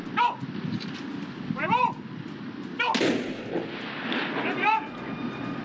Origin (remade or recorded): recorded